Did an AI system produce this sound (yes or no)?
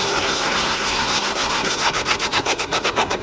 yes